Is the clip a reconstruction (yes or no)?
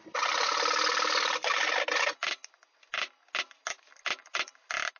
no